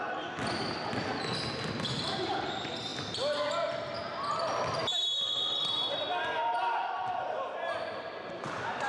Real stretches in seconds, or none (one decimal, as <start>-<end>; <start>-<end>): 0.0-8.9